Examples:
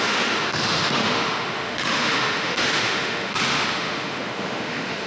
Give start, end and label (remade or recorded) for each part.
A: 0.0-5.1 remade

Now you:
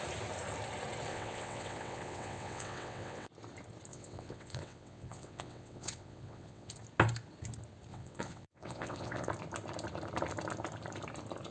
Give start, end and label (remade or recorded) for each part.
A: 0.0-1.1 recorded; 1.1-3.3 remade; 3.3-3.9 recorded; 3.9-6.7 remade; 6.7-7.9 recorded; 7.9-9.3 remade; 9.3-11.5 recorded

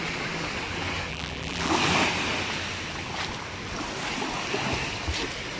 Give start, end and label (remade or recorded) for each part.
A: 0.0-1.1 recorded; 1.1-1.7 remade; 1.7-5.6 recorded